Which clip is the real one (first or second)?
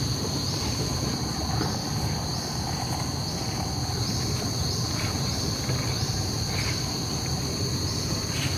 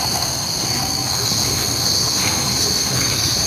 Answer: first